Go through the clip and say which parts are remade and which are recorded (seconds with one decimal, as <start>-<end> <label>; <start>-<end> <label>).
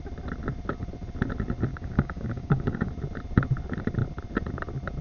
0.0-1.7 recorded; 1.7-2.9 remade; 2.9-5.0 recorded